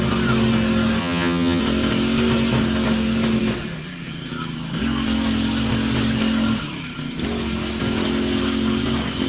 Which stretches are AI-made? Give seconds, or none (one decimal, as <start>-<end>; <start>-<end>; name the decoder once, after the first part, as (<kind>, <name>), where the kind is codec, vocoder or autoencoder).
1.0-1.6 (vocoder, HiFi-GAN)